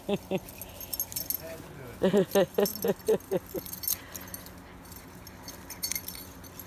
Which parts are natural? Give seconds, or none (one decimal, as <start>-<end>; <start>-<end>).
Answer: 0.0-6.7